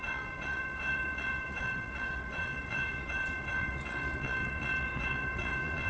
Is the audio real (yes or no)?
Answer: no